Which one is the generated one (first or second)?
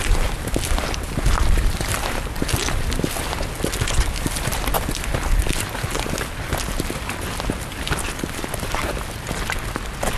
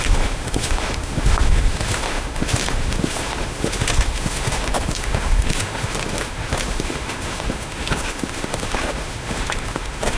second